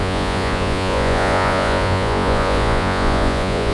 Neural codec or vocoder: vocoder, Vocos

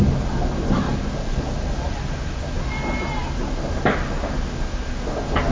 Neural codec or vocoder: none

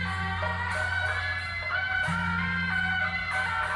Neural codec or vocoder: none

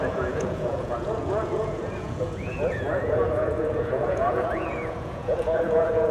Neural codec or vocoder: vocoder, Vocos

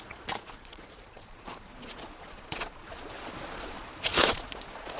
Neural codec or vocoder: vocoder, Vocos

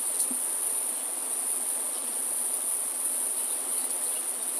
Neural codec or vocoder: vocoder, Vocos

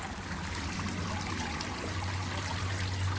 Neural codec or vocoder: none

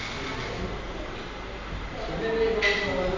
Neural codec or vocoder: none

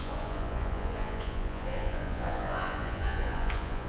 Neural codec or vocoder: vocoder, Vocos